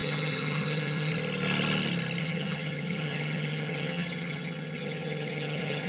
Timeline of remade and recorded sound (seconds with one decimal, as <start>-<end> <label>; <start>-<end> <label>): 0.0-1.1 remade; 1.1-2.2 recorded; 2.2-5.9 remade